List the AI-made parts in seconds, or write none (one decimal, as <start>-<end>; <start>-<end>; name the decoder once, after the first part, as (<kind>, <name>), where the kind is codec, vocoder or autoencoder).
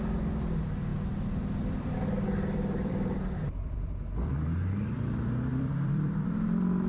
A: 0.0-4.3 (vocoder, BigVGAN v2); 4.9-6.9